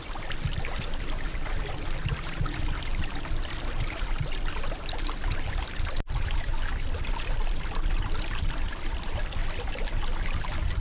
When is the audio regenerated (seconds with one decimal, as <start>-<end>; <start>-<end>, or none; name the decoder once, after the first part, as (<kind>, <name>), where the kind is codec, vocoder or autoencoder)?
0.0-6.5 (vocoder, BigVGAN v2); 7.1-9.4